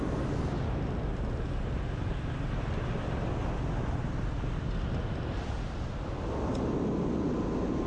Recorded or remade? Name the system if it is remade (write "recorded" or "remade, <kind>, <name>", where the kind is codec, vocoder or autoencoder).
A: recorded